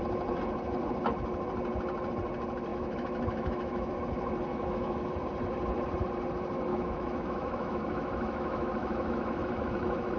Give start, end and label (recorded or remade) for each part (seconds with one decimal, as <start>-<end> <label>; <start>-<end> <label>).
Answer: 0.0-2.7 recorded; 2.7-3.9 remade; 3.9-4.5 recorded; 4.5-5.1 remade; 5.1-6.7 recorded; 6.7-10.2 remade